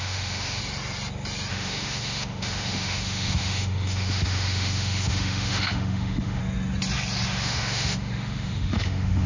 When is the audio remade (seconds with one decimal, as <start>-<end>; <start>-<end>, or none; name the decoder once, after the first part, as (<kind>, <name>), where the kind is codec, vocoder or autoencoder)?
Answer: 0.0-0.6 (autoencoder, DAC-VAE); 1.5-6.4; 7.3-9.3